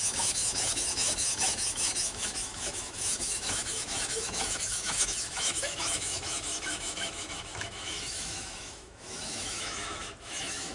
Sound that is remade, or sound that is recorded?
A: remade